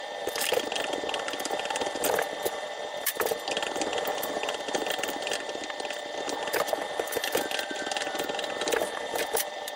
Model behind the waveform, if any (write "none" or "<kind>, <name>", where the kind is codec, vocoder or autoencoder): vocoder, BigVGAN v2